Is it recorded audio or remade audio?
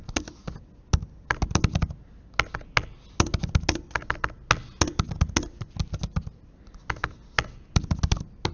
recorded